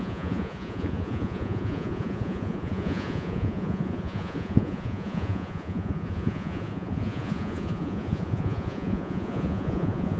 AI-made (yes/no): yes